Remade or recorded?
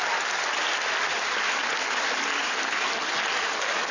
recorded